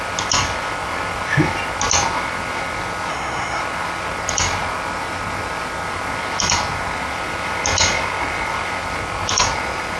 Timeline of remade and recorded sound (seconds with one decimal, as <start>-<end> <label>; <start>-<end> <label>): 0.0-3.1 recorded; 3.1-3.6 remade; 3.6-10.0 recorded